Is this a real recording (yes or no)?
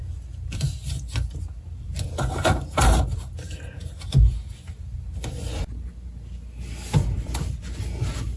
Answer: yes